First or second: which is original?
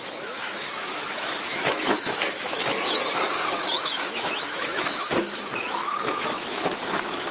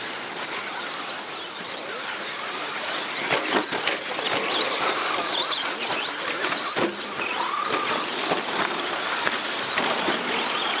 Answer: second